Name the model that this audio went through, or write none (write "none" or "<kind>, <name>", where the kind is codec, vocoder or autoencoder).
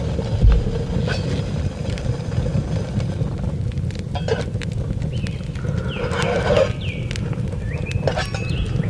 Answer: none